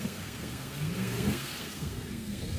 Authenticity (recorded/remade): remade